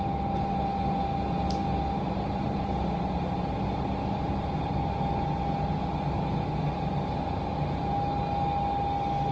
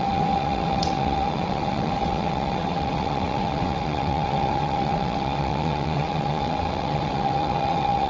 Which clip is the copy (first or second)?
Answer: second